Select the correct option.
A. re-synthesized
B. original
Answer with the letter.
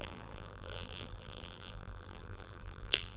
A